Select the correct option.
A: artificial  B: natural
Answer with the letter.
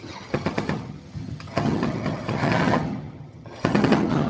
A